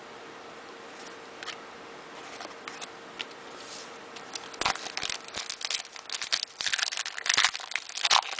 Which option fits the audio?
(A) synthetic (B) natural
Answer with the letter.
B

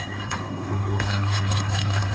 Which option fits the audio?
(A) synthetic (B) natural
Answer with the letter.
A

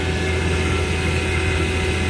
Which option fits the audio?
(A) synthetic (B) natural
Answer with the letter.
B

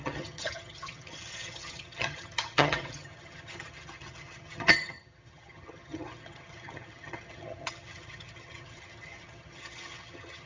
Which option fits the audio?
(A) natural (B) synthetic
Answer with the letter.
B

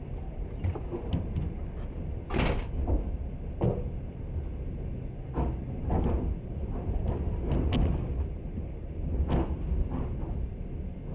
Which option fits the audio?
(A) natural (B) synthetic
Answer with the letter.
A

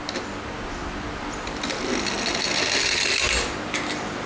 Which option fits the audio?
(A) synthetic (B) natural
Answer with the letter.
B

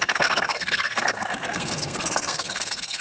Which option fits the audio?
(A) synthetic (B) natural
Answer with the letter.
A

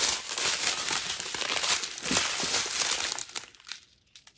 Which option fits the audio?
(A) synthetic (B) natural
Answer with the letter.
B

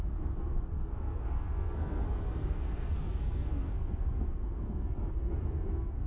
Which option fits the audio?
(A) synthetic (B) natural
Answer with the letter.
A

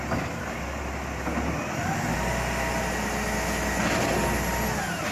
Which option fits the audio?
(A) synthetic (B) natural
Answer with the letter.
B